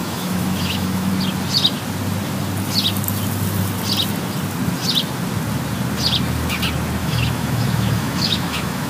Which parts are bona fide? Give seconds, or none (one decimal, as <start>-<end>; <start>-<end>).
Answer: 1.1-7.0